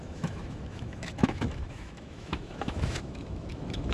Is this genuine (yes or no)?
no